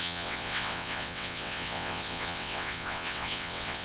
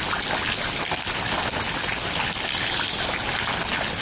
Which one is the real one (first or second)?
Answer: second